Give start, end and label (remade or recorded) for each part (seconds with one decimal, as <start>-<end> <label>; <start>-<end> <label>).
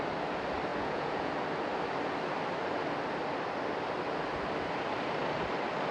0.0-0.7 recorded; 0.7-1.3 remade; 1.3-5.9 recorded